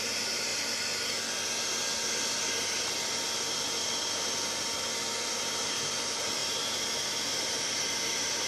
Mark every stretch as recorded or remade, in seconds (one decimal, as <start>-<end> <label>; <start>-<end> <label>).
0.0-0.5 remade; 0.5-5.3 recorded; 5.3-8.5 remade